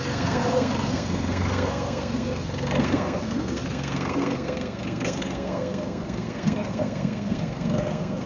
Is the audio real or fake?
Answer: fake